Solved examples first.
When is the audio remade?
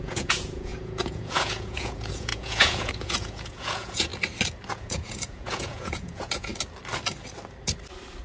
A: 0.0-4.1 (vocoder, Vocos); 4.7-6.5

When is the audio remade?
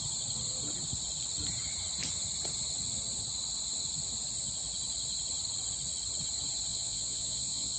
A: 6.7-7.8 (vocoder, Vocos)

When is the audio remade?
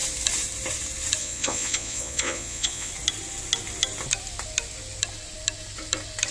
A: 1.2-2.9 (vocoder, Vocos)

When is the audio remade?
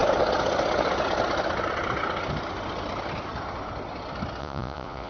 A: 4.4-5.1 (vocoder, Vocos)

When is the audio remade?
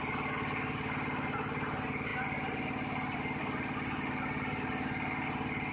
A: none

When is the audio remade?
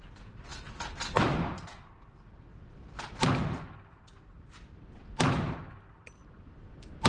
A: none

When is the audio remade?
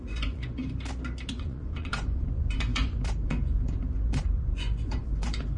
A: 0.0-0.6 (vocoder, Vocos); 1.3-5.6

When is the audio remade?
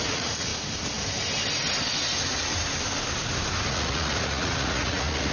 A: 0.0-0.5 (vocoder, Vocos); 3.7-5.3